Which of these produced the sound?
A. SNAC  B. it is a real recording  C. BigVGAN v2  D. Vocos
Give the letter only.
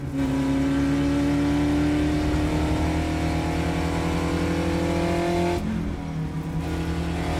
B